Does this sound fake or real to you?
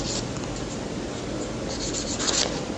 real